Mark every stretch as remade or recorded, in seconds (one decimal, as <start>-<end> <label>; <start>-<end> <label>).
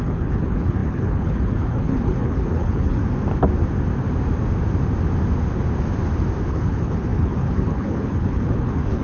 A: 0.0-3.0 remade; 3.0-6.5 recorded; 6.5-9.0 remade